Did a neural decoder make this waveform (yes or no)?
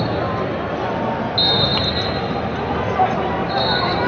no